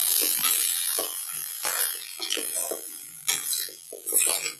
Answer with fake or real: fake